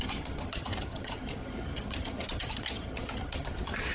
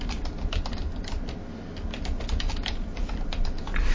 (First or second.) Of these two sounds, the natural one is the second